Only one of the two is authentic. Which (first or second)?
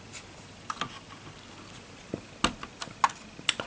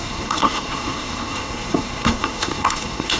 first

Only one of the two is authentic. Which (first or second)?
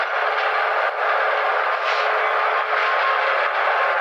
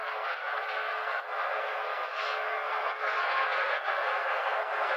first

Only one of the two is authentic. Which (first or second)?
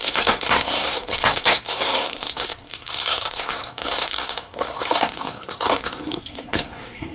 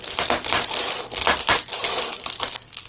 second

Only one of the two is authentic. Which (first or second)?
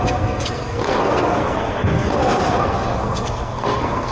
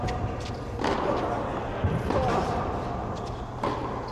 second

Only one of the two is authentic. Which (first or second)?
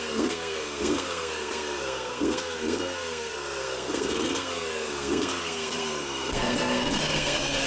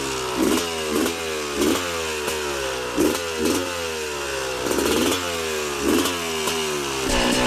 second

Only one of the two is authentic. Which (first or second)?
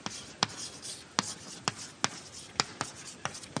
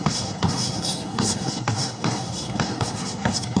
first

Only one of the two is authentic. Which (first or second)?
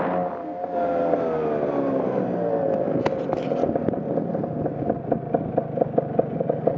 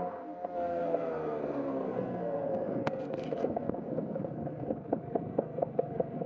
first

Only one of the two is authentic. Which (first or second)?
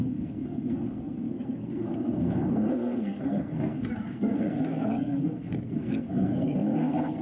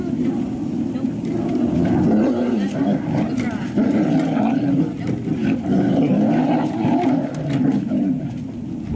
second